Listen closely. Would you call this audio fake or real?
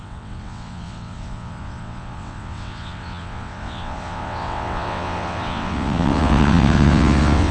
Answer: fake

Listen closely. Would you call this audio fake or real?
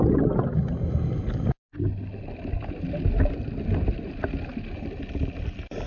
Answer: real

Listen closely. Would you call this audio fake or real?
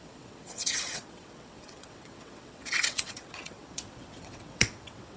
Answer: fake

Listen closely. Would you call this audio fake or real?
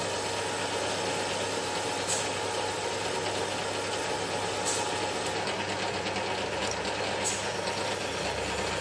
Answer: real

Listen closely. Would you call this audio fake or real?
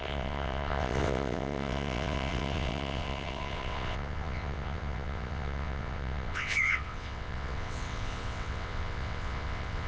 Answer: fake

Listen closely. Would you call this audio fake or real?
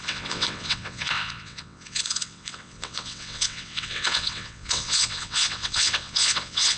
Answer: fake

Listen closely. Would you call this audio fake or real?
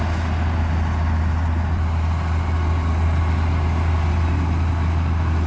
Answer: real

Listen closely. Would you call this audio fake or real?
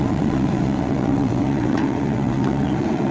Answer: fake